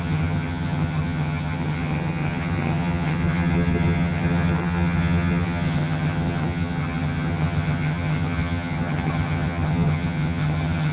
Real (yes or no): no